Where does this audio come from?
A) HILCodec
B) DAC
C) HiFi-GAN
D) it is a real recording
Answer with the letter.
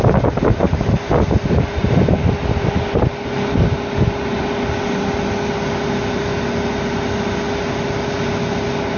D